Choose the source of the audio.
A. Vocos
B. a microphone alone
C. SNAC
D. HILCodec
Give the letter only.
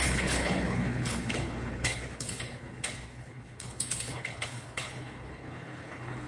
D